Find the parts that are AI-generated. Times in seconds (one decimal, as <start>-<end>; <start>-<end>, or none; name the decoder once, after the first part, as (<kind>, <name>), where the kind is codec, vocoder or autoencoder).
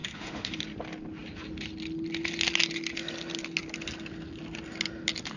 0.0-0.6 (autoencoder, DAC-VAE)